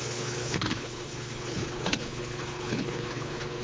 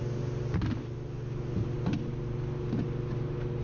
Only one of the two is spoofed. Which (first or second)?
first